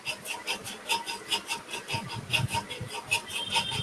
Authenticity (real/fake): real